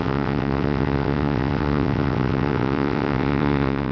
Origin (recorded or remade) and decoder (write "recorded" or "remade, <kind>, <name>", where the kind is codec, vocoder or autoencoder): remade, vocoder, WaveNeXt